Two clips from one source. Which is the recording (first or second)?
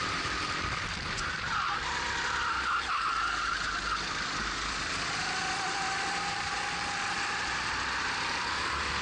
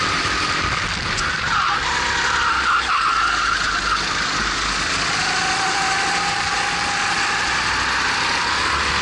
second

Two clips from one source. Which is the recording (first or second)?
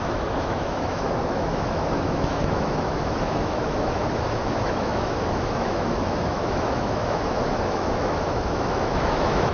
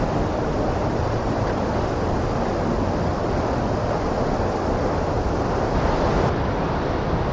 second